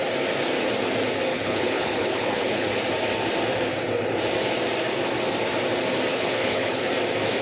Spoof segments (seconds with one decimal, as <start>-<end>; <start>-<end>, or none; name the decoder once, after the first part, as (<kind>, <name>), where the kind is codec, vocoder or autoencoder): 1.3-2.7 (codec, HILCodec); 6.1-6.9